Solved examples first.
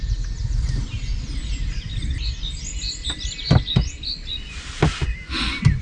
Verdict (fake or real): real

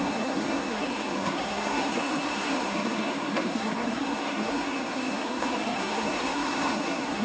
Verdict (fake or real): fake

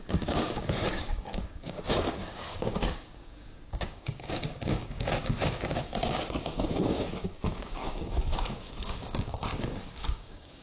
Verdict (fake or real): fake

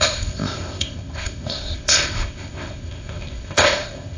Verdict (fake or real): fake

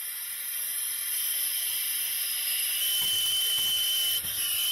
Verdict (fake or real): real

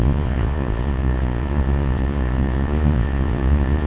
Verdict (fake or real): fake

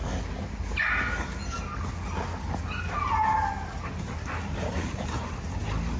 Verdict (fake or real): real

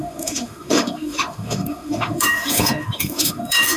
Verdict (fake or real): fake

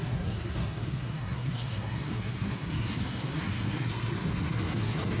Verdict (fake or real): fake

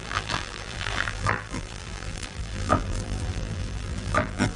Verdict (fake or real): fake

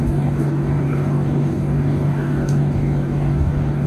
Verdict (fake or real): fake